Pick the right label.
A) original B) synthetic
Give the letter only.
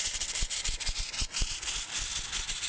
A